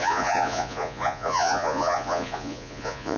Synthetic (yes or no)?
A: yes